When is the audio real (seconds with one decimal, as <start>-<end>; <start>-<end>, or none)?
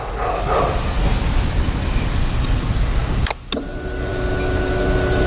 0.0-5.3